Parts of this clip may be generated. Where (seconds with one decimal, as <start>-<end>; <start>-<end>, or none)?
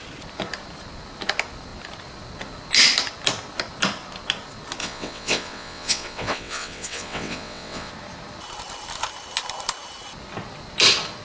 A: 4.8-7.9